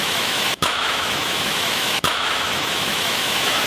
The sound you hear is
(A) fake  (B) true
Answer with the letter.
A